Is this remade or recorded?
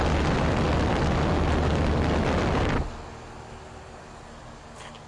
recorded